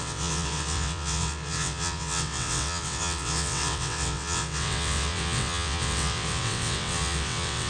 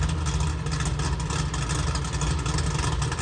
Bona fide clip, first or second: second